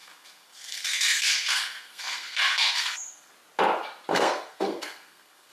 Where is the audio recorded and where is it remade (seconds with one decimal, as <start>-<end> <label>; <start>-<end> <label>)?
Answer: 0.0-3.3 remade; 3.3-4.1 recorded; 4.1-5.5 remade